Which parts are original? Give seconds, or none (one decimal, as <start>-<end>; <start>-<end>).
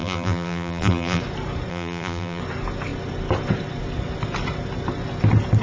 1.2-1.7; 2.4-5.6